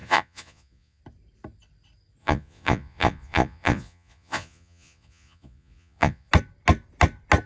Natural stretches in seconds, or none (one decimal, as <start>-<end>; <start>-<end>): 1.0-2.2; 6.3-7.5